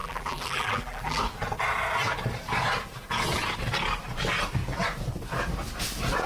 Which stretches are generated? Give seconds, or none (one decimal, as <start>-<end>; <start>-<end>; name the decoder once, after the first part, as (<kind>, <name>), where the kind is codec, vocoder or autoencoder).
0.0-1.2 (vocoder, BigVGAN v2)